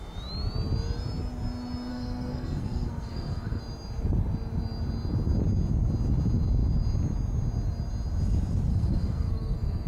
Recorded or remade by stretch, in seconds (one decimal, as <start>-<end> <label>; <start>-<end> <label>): 0.0-1.9 recorded; 1.9-3.6 remade; 3.6-8.7 recorded; 8.7-9.9 remade